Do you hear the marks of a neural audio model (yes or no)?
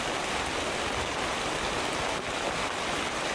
no